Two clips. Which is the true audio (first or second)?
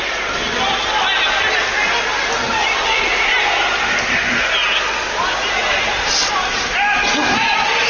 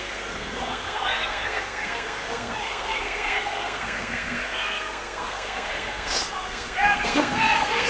first